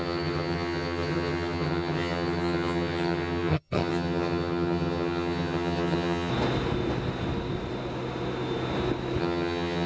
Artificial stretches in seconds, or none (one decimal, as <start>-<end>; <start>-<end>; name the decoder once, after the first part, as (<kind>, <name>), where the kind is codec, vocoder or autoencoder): 0.0-6.3 (vocoder, HiFi-GAN); 9.2-9.9